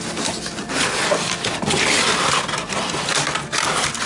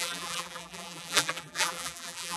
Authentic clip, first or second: first